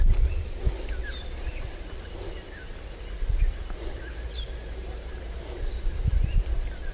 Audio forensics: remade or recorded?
recorded